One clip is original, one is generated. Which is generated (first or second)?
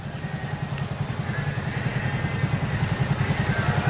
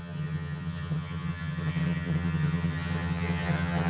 second